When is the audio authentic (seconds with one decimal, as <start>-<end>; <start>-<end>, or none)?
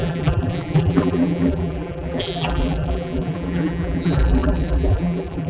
none